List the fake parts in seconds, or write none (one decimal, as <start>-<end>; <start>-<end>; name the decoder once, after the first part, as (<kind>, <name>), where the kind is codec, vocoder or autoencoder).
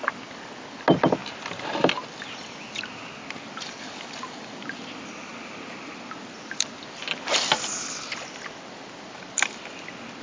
none